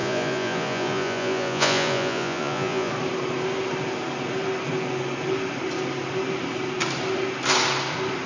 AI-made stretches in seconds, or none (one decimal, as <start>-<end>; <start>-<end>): 0.0-2.9